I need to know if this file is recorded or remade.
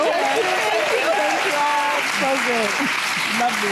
recorded